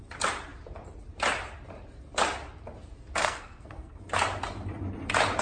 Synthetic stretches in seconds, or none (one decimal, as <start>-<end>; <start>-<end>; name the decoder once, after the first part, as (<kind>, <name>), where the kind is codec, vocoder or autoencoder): 3.2-4.0 (codec, SNAC)